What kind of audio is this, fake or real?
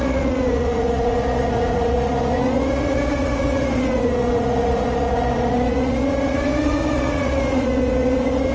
fake